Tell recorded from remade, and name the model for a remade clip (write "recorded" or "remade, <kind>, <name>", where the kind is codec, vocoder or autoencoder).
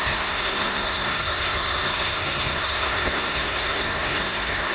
remade, codec, SNAC